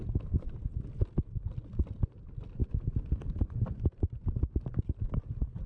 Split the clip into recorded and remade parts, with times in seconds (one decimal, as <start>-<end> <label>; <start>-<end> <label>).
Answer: 0.0-5.7 recorded